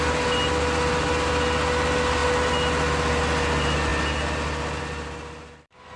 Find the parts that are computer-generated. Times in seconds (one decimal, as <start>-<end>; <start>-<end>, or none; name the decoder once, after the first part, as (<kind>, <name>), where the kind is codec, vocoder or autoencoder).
none

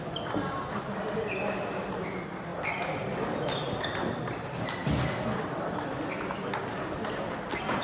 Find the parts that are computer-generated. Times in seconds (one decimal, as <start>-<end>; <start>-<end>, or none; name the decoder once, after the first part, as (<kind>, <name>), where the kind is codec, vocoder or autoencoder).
none